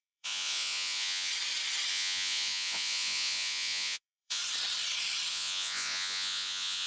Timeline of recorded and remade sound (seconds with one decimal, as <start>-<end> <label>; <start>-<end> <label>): 0.0-1.3 remade; 1.3-1.9 recorded; 1.9-4.4 remade; 4.4-5.3 recorded; 5.3-6.9 remade